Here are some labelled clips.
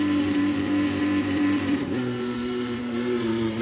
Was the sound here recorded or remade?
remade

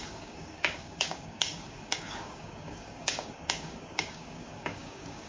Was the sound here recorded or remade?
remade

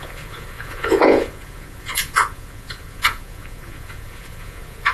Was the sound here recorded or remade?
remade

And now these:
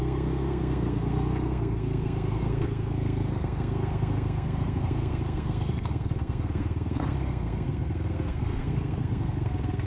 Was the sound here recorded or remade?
remade